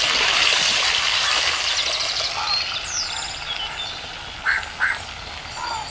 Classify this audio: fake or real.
real